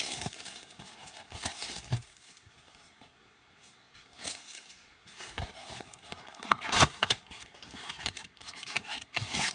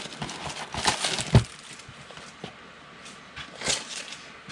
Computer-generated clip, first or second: first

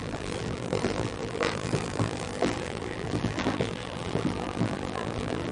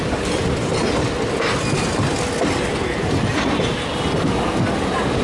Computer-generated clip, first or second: first